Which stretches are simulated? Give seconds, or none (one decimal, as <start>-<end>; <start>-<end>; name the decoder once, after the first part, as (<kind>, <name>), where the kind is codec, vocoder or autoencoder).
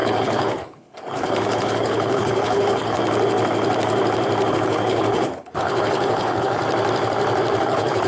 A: 0.0-3.0 (codec, HILCodec); 4.5-6.6; 7.6-8.1